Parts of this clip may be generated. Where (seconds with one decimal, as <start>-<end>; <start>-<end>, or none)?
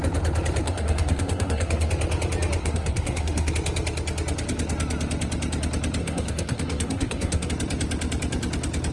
0.6-1.9; 2.6-3.5; 6.0-7.5